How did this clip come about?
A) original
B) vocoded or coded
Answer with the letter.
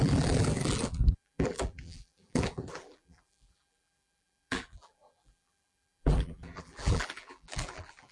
B